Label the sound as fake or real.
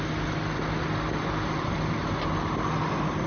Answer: real